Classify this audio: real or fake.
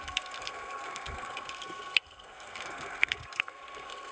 fake